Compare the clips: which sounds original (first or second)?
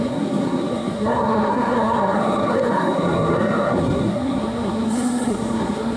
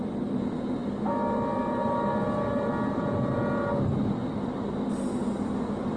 second